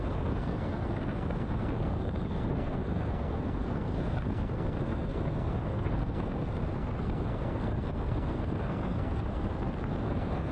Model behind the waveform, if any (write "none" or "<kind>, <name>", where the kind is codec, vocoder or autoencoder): codec, SNAC